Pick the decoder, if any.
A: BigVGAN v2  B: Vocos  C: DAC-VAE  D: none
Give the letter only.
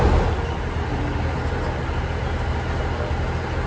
D